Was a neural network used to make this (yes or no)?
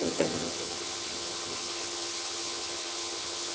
yes